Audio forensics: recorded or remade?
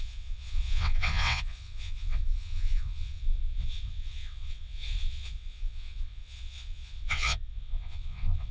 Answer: remade